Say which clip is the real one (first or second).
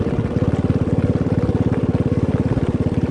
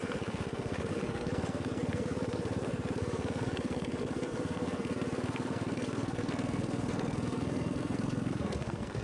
first